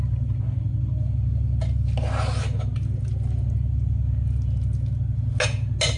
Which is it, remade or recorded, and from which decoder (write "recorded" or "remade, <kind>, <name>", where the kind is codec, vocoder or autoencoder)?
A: recorded